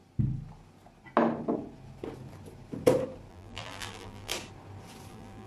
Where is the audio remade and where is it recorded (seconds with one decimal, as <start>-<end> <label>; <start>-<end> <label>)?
0.0-3.3 recorded; 3.3-4.3 remade; 4.3-5.1 recorded; 5.1-5.5 remade